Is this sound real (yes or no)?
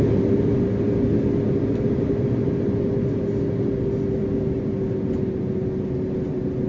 yes